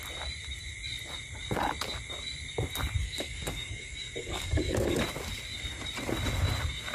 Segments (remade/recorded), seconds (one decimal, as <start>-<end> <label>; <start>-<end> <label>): 0.0-3.0 recorded; 3.0-5.0 remade; 5.0-6.9 recorded